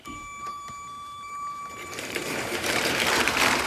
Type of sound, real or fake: fake